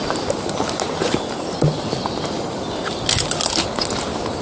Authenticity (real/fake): real